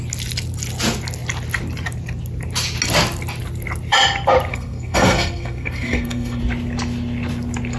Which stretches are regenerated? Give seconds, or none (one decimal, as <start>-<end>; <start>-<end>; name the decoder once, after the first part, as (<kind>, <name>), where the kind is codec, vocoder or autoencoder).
4.5-6.4 (codec, SNAC)

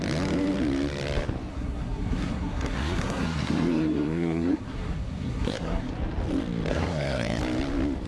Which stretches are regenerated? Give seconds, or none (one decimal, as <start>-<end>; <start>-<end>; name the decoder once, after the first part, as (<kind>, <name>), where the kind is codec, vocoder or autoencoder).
1.5-5.9 (codec, SNAC); 6.7-7.4

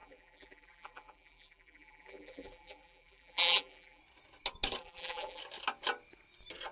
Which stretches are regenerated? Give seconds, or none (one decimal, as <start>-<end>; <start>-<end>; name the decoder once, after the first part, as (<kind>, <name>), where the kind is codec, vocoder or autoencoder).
0.0-4.0 (vocoder, BigVGAN v2); 4.8-5.4

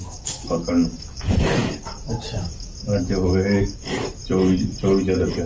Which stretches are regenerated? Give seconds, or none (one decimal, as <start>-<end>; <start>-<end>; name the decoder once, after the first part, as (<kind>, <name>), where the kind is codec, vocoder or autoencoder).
0.0-4.2 (codec, DAC)

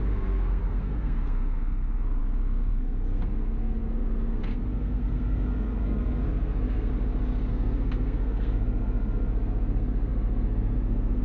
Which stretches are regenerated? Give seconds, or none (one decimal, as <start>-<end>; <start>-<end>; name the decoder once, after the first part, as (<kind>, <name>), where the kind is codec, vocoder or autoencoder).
0.0-6.9 (codec, SNAC); 7.5-11.2

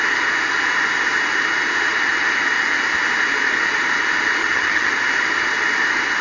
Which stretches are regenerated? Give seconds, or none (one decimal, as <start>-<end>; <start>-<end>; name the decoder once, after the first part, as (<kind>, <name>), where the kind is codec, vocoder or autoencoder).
4.4-4.9 (vocoder, HiFi-GAN)

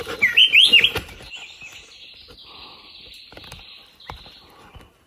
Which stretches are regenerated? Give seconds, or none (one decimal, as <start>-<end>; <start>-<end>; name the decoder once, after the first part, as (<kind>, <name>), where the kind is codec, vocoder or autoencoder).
none

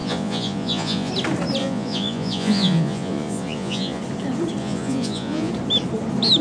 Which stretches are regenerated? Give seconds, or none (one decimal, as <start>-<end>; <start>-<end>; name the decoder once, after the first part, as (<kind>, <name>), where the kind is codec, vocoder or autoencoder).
0.0-1.1 (vocoder, Vocos); 1.6-4.0; 4.6-5.5